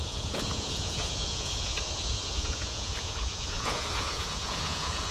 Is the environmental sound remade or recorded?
remade